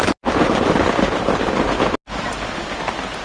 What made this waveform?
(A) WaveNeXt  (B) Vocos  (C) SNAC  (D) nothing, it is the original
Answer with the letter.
D